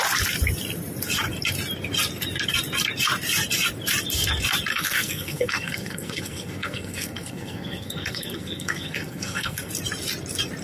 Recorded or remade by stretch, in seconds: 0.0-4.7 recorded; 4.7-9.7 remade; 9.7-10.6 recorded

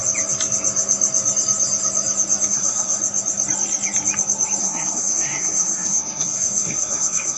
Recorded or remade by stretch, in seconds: 0.0-2.5 recorded; 2.5-3.0 remade; 3.0-4.6 recorded; 4.6-7.4 remade